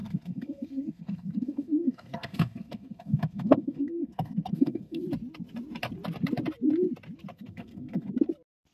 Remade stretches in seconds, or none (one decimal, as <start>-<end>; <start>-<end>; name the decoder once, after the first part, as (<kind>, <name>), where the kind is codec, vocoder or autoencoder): 0.0-5.0 (codec, SNAC); 7.3-8.1